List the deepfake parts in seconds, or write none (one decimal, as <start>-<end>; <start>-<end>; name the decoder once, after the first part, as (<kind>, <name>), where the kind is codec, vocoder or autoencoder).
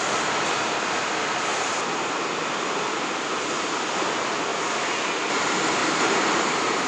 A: 1.5-2.2 (vocoder, BigVGAN v2); 5.8-6.4